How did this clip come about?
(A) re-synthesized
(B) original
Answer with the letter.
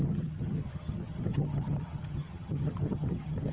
A